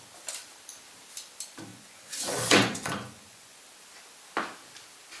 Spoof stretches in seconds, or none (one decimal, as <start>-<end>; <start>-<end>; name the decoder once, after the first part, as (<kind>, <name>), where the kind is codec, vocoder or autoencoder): 1.7-3.6 (vocoder, Vocos)